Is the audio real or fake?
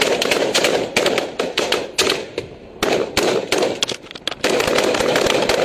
real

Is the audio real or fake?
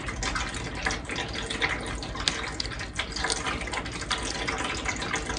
real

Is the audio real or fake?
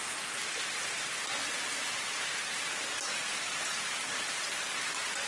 real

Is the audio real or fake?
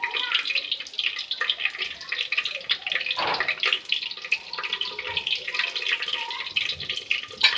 real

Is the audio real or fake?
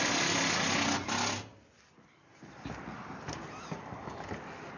real